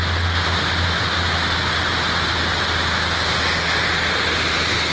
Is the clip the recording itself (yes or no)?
yes